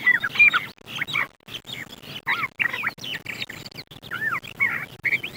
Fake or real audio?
real